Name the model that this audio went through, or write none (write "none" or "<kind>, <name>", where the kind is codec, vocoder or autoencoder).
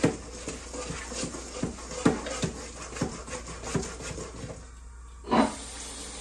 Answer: none